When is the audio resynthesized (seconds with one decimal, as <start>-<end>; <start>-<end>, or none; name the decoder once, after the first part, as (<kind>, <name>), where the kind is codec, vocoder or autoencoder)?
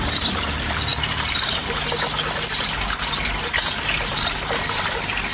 none